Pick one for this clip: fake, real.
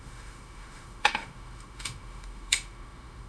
fake